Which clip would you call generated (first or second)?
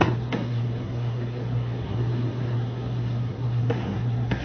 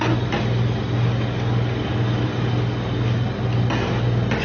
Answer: first